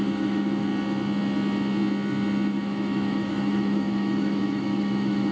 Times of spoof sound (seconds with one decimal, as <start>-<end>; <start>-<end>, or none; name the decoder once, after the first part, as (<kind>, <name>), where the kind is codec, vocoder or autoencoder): 0.0-0.7 (autoencoder, DAC-VAE); 2.5-5.3